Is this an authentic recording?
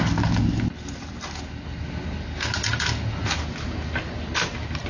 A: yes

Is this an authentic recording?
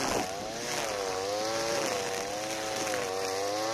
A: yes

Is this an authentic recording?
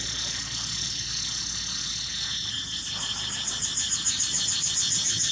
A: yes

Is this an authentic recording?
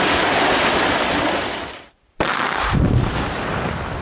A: no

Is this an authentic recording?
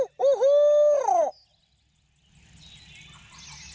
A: yes